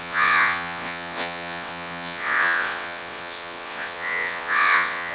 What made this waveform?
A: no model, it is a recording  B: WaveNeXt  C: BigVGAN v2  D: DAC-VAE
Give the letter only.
B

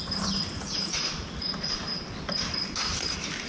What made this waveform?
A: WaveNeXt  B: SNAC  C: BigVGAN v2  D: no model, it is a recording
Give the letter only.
D